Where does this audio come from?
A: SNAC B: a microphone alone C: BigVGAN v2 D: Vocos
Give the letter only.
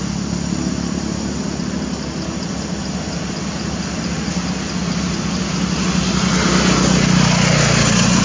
B